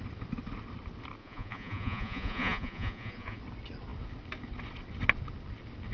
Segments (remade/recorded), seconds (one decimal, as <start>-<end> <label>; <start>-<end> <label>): 0.0-1.2 recorded; 1.2-3.4 remade; 3.4-5.9 recorded

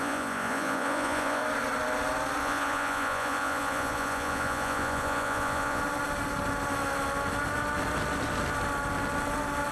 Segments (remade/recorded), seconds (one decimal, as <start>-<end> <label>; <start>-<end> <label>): 0.0-1.4 remade; 1.4-2.4 recorded; 2.4-5.8 remade; 5.8-9.7 recorded

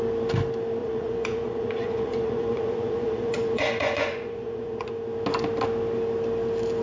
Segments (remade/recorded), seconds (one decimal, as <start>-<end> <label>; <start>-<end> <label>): 0.0-0.8 recorded; 0.8-4.9 remade; 4.9-6.8 recorded

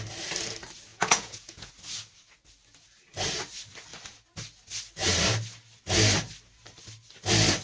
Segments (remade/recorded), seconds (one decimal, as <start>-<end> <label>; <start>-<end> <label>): 0.0-0.9 recorded; 0.9-1.7 remade; 1.7-7.6 recorded

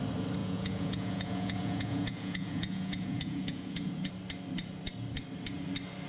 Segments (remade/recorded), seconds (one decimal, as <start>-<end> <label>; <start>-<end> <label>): 0.0-0.4 recorded; 0.4-4.1 remade; 4.1-6.1 recorded

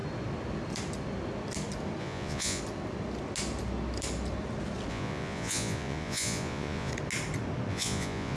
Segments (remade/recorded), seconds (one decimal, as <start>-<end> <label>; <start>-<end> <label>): 0.0-2.0 recorded; 2.0-2.6 remade; 2.6-4.9 recorded; 4.9-6.9 remade; 6.9-7.7 recorded; 7.7-8.4 remade

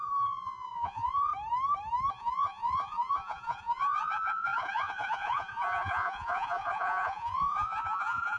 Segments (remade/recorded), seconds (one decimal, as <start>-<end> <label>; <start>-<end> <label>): 0.0-1.3 remade; 1.3-2.1 recorded; 2.1-8.4 remade